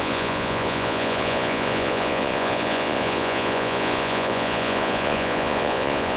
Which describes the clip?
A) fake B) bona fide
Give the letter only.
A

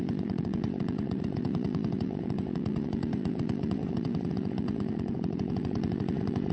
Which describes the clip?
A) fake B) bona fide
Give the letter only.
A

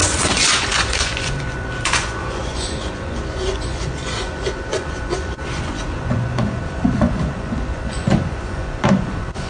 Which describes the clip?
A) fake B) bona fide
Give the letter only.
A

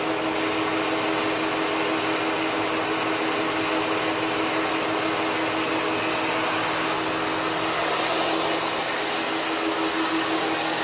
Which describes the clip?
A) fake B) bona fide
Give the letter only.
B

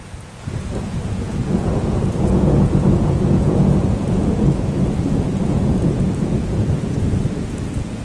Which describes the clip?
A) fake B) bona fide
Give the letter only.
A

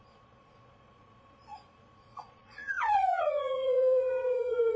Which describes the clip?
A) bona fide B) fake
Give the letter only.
B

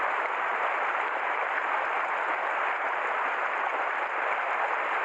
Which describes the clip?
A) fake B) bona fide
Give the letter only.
B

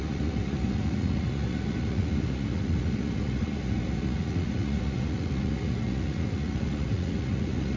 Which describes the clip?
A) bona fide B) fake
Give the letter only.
B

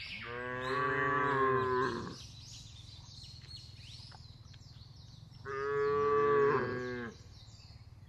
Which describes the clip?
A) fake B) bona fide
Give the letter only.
B